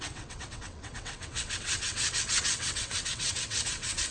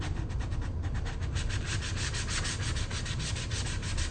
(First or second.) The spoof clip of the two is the first